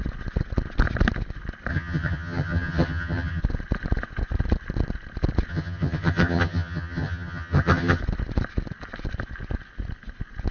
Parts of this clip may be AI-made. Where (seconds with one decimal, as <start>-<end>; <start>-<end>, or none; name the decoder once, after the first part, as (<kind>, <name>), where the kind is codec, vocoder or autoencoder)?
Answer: 1.7-3.4 (vocoder, HiFi-GAN); 5.5-8.0